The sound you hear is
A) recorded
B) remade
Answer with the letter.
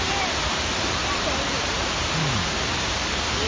B